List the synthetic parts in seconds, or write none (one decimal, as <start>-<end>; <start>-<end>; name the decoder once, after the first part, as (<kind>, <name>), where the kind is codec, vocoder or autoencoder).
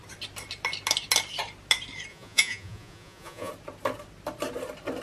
2.1-3.5 (vocoder, Vocos)